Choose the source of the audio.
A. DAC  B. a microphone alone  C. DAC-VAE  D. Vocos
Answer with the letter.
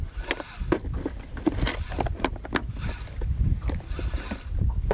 B